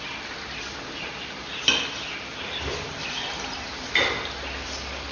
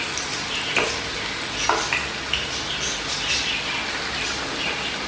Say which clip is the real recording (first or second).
second